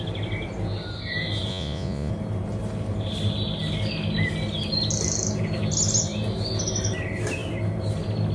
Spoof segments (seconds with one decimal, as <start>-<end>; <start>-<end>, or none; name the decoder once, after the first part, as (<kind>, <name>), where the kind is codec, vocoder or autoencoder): 1.5-2.1 (vocoder, Vocos)